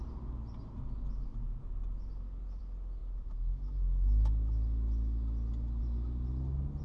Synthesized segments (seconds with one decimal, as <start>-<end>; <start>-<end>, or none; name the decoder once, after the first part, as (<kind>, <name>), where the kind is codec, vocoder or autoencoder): none